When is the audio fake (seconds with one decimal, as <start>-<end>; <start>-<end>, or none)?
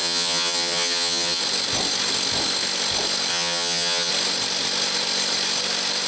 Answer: 0.0-1.4; 3.3-4.1